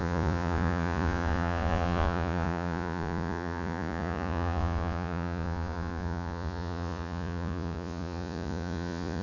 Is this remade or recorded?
remade